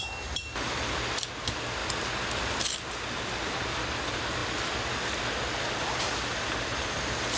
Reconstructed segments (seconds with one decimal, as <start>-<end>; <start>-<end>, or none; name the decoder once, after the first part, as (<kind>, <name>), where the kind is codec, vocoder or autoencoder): none